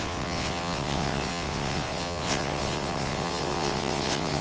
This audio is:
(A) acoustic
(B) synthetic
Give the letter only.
B